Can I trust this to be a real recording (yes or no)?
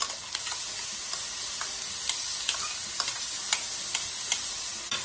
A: yes